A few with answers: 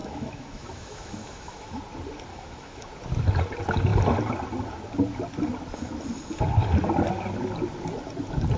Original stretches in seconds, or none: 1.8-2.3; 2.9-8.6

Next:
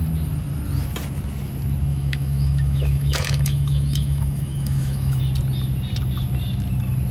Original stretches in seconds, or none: 0.0-1.9; 5.2-7.1